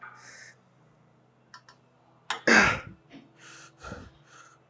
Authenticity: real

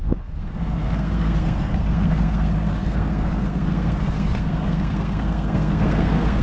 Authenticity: fake